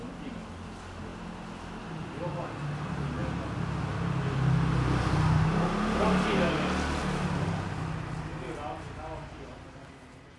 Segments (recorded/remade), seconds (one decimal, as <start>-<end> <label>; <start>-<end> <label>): 0.0-10.4 recorded